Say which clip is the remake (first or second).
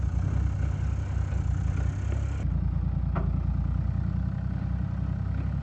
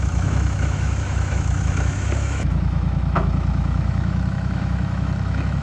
second